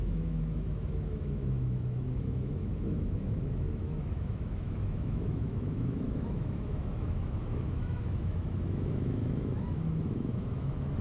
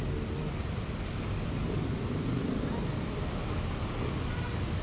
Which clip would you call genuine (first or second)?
second